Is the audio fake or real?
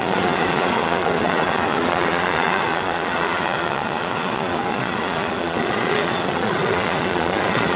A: fake